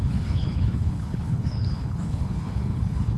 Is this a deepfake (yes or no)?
yes